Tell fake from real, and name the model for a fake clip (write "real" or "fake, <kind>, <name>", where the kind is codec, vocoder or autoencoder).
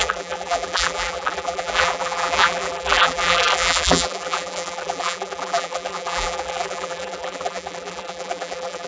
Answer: fake, vocoder, BigVGAN v2